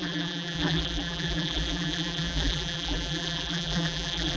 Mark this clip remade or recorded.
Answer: remade